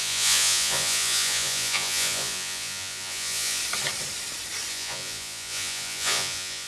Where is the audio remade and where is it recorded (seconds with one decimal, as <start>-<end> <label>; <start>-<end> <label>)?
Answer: 0.0-3.6 remade; 3.6-4.7 recorded; 4.7-6.7 remade